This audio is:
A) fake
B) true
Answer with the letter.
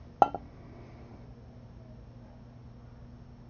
B